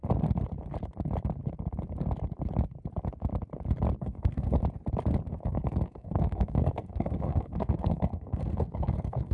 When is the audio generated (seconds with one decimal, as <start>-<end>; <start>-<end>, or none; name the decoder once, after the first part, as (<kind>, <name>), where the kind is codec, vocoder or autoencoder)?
4.0-4.6 (codec, SNAC); 5.3-9.3